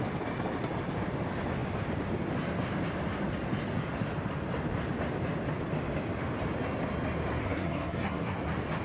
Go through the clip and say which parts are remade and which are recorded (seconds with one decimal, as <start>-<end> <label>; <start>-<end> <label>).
0.0-7.4 recorded; 7.4-8.4 remade; 8.4-8.8 recorded